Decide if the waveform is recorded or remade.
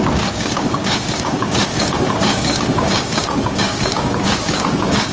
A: remade